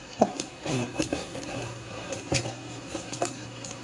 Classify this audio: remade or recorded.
remade